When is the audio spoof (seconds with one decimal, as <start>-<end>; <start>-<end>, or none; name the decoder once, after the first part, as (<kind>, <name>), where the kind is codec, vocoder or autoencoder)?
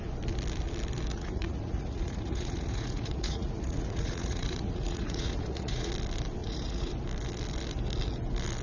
1.1-5.9 (vocoder, Vocos); 6.4-6.9